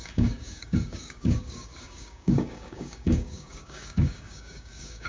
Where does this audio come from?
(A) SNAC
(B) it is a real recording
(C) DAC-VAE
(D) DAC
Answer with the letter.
D